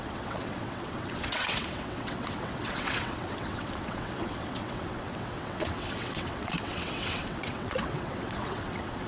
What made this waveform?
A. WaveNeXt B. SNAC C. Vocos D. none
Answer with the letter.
A